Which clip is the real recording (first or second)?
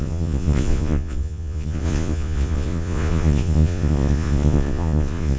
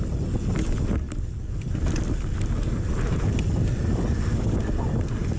second